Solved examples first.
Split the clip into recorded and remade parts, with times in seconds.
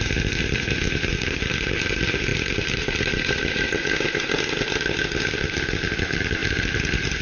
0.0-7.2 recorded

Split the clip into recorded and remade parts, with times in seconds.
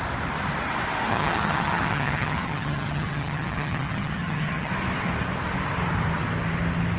0.0-1.1 recorded; 1.1-4.7 remade; 4.7-7.0 recorded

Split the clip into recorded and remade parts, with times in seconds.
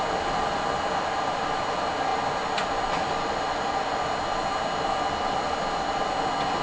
0.0-6.6 recorded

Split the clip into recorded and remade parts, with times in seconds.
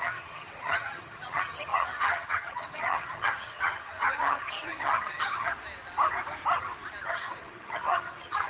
0.0-5.5 remade; 5.5-7.0 recorded; 7.0-8.5 remade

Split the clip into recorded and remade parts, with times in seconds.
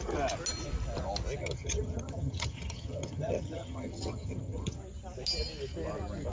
0.0-1.4 recorded; 1.4-4.8 remade; 4.8-6.3 recorded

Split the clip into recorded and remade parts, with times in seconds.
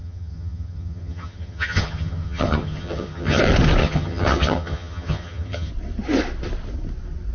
0.0-3.4 remade; 3.4-3.8 recorded; 3.8-5.7 remade; 5.7-7.3 recorded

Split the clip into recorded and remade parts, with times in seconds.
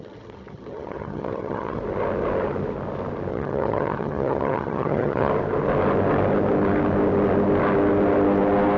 0.0-1.8 remade; 1.8-3.3 recorded; 3.3-5.3 remade; 5.3-8.8 recorded